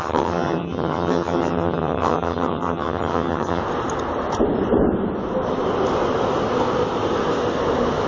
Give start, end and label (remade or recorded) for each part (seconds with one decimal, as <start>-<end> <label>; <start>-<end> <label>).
0.0-3.6 remade; 3.6-8.1 recorded